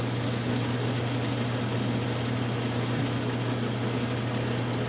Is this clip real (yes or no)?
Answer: yes